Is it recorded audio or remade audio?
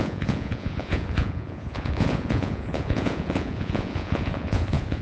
remade